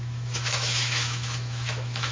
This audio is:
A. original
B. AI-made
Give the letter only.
B